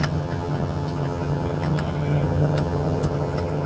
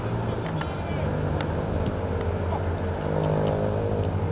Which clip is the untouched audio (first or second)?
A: second